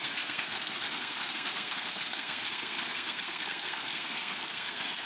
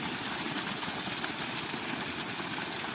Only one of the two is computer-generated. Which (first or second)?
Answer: first